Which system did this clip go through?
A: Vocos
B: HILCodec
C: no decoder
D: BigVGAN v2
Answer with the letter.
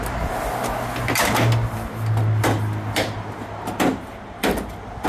C